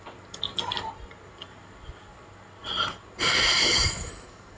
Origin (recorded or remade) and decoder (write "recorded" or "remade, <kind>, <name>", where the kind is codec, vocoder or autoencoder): recorded